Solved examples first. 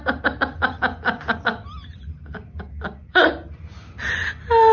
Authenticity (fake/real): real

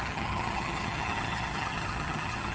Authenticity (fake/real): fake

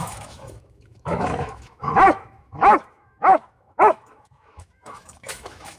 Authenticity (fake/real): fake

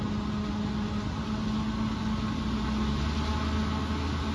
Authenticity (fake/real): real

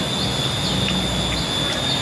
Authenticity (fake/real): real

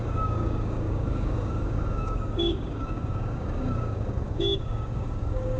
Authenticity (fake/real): fake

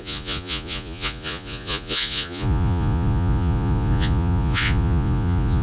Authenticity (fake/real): fake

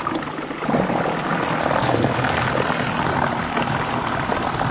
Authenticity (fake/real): real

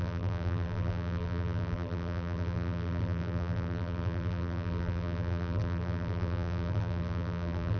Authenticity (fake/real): fake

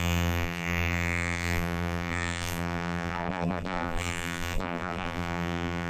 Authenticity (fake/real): fake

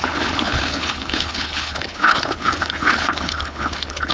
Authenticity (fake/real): fake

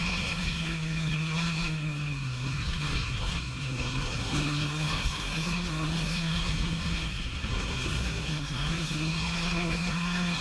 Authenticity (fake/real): fake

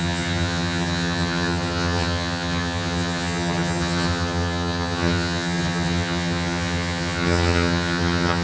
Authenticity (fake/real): fake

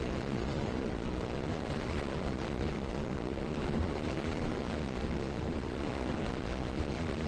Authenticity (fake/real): fake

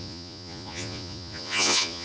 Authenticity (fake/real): fake